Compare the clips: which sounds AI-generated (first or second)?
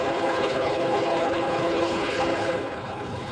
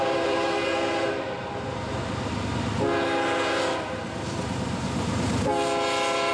first